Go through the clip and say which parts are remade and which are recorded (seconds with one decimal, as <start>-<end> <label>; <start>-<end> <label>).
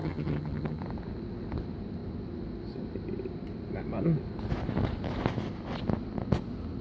0.0-0.8 remade; 0.8-6.8 recorded